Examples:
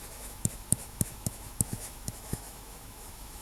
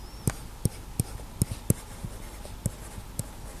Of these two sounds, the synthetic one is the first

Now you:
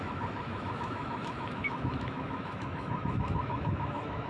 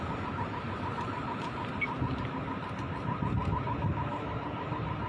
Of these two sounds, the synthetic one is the first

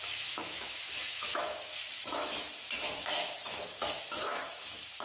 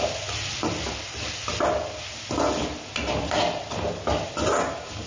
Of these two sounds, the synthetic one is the first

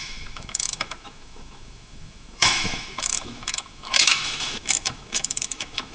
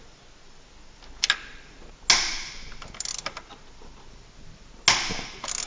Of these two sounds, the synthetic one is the first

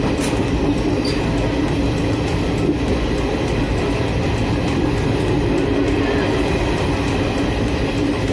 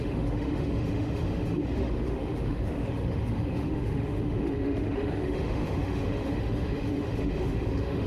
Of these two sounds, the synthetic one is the second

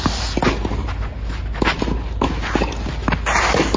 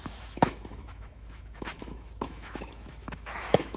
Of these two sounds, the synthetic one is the second